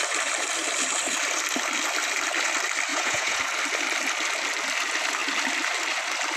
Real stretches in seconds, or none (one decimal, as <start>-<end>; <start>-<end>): 0.0-2.9; 3.4-6.4